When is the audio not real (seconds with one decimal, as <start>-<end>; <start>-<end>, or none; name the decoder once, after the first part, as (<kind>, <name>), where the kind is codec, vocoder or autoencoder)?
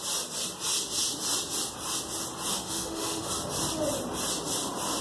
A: 2.5-3.3 (autoencoder, DAC-VAE)